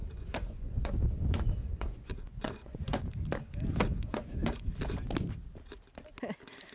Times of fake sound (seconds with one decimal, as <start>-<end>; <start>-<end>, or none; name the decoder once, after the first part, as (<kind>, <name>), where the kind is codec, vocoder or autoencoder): 0.0-3.0 (vocoder, Vocos); 3.9-4.7